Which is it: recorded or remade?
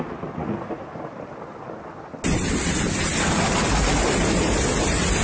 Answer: recorded